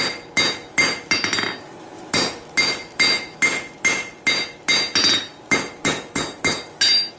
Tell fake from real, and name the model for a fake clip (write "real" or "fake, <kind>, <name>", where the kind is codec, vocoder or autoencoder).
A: real